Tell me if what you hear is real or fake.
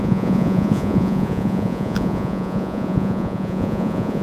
fake